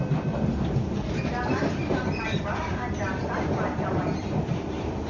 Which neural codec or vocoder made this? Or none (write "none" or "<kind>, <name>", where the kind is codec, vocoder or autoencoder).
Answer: none